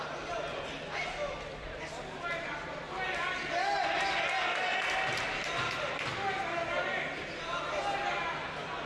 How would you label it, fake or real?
real